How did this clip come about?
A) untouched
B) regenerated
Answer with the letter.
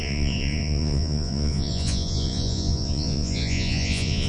B